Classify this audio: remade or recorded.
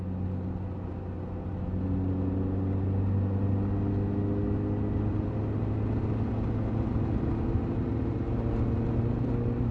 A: recorded